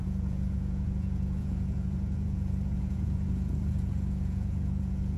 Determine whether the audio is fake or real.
fake